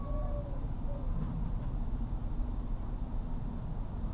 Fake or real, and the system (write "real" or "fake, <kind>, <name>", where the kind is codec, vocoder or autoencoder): real